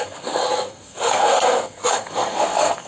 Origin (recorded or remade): remade